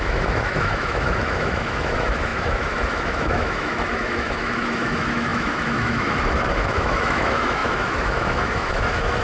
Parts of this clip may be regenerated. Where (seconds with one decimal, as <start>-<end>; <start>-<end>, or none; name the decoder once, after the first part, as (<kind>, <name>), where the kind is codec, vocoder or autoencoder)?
0.0-9.2 (autoencoder, DAC-VAE)